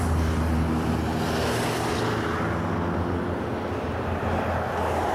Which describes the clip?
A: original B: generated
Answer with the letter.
A